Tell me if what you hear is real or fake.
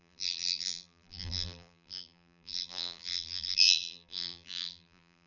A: fake